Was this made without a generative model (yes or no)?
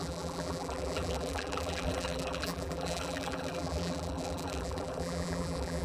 no